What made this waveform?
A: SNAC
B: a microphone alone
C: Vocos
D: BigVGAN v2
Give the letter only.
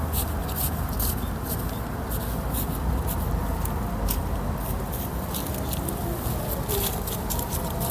B